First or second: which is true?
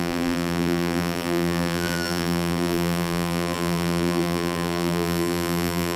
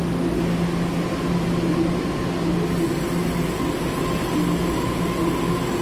second